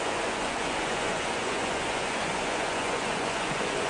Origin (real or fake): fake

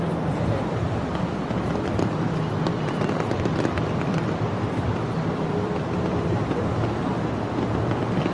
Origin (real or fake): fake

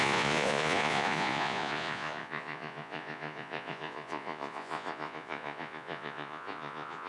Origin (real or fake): fake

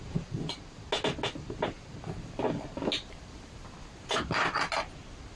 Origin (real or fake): real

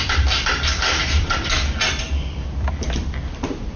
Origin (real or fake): fake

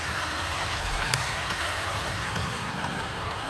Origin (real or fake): fake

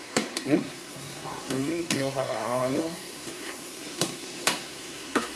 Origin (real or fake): fake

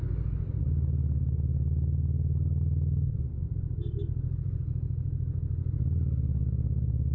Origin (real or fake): real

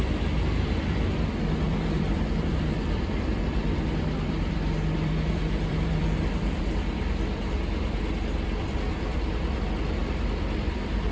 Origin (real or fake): fake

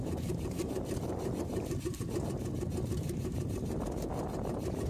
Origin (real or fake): fake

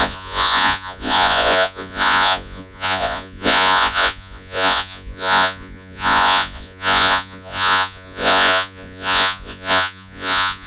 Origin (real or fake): fake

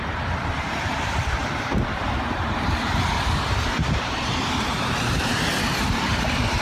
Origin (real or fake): fake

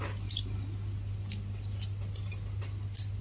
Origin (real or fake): real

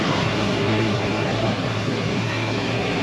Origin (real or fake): fake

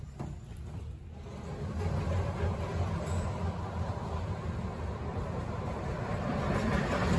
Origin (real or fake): real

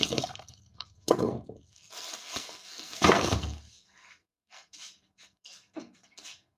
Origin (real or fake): fake